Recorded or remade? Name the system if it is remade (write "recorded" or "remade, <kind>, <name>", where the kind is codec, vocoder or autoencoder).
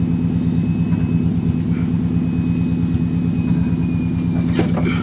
recorded